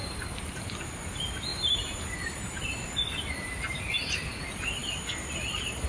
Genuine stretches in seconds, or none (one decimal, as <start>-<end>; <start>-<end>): 0.6-1.5; 3.8-5.9